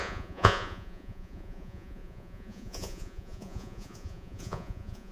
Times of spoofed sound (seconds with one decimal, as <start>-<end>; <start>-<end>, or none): 0.0-5.1